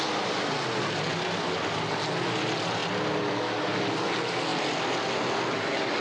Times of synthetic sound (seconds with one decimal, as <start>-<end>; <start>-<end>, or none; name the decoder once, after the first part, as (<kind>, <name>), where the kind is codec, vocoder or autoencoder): none